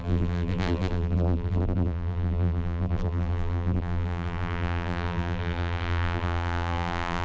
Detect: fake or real fake